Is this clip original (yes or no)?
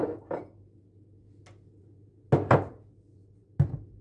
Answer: yes